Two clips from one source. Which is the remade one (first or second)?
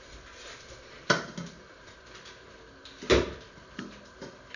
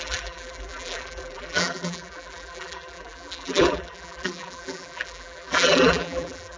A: second